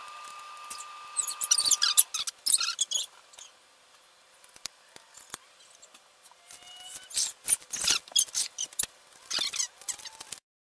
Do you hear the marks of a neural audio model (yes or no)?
no